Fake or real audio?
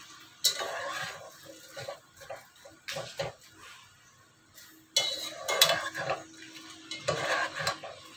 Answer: real